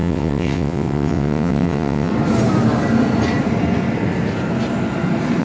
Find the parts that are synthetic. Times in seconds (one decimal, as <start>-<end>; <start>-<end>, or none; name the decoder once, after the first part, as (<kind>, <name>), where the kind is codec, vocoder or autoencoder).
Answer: 0.0-2.1 (vocoder, WaveNeXt)